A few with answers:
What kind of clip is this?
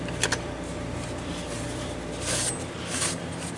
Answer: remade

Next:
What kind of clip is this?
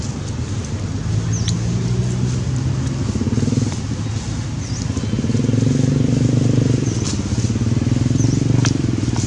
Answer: recorded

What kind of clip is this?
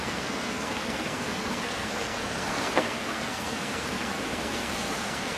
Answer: remade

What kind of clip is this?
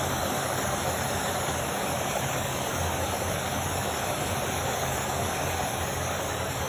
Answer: remade